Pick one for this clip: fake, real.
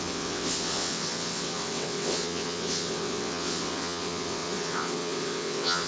fake